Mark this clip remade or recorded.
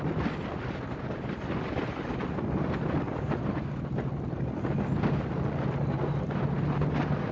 recorded